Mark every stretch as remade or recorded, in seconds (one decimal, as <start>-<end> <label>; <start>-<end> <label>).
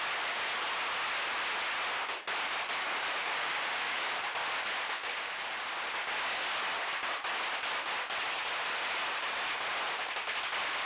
0.0-3.2 recorded; 3.2-4.2 remade; 4.2-4.8 recorded; 4.8-5.3 remade; 5.3-10.9 recorded